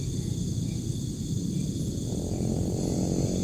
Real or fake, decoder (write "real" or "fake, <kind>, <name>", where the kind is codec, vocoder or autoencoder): real